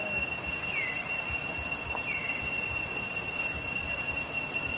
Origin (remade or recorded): recorded